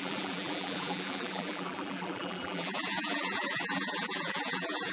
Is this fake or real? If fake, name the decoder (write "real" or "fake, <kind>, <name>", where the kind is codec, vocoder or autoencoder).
fake, vocoder, BigVGAN v2